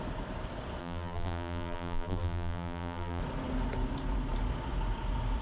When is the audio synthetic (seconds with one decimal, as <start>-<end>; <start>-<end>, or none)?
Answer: 0.8-3.2